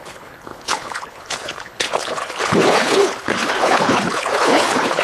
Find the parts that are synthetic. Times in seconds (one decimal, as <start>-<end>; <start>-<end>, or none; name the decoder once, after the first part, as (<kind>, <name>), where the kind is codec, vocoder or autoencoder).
0.0-5.0 (codec, HILCodec)